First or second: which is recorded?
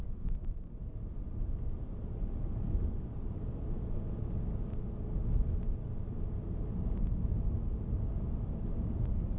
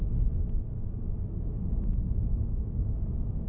first